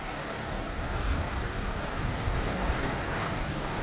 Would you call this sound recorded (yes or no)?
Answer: no